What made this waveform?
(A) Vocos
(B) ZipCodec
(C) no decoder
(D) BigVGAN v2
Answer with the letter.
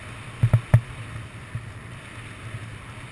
C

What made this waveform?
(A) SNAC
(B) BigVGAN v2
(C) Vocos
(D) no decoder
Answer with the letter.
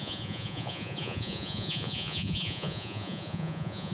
C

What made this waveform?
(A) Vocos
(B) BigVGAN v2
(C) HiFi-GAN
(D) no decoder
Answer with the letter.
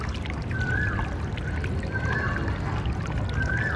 D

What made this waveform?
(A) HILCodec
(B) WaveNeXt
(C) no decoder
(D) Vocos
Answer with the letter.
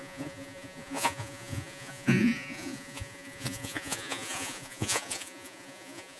D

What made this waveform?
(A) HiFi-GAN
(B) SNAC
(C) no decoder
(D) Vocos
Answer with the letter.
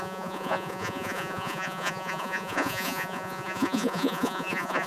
D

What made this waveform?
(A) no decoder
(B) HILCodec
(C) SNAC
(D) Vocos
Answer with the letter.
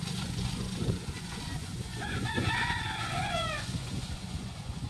D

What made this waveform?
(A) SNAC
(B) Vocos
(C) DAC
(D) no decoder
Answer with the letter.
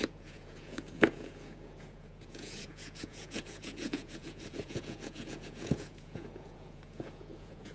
B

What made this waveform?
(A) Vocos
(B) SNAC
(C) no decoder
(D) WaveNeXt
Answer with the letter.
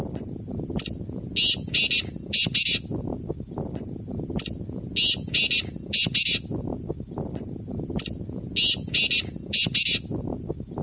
C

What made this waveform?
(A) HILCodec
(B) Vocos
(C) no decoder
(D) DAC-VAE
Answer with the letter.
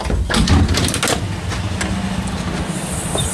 C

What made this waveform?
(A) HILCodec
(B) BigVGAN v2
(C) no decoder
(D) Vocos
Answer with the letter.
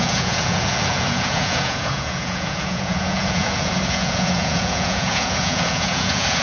D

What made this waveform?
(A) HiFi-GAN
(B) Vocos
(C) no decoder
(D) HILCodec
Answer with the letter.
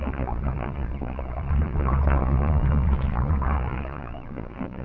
B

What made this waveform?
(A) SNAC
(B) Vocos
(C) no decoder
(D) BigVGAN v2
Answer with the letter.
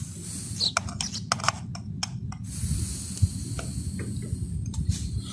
C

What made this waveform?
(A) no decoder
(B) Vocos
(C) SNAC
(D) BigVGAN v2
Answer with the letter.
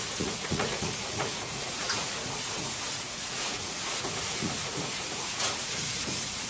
B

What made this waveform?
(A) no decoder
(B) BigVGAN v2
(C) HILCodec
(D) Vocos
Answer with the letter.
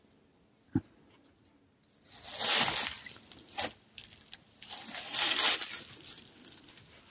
A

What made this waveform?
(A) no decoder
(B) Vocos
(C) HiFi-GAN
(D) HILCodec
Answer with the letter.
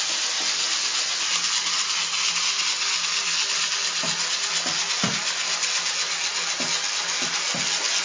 A